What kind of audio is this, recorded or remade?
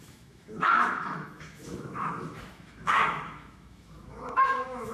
remade